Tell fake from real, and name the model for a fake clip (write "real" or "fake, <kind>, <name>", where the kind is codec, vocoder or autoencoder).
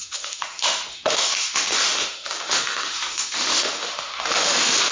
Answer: fake, autoencoder, DAC-VAE